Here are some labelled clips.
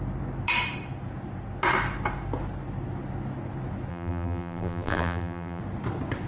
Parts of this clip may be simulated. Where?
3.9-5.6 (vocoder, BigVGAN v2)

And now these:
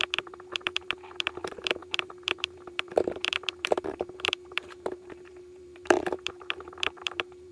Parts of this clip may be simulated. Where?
0.0-7.5 (vocoder, BigVGAN v2)

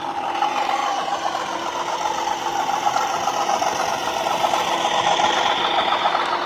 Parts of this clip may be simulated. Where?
none

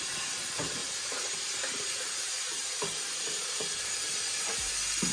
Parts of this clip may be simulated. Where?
0.8-3.9 (vocoder, BigVGAN v2)